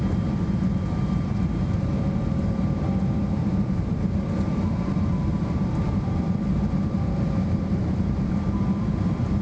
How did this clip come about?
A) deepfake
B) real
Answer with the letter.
A